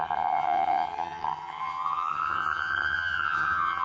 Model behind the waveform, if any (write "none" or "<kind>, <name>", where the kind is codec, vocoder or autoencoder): vocoder, HiFi-GAN